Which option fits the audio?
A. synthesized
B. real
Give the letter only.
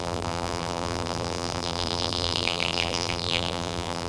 A